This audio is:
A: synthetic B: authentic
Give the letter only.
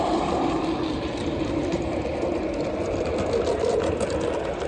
B